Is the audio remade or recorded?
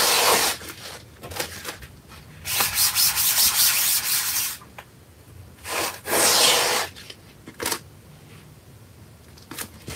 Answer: recorded